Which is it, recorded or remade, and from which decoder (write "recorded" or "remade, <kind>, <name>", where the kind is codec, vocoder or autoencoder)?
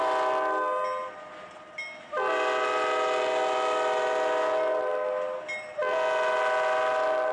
recorded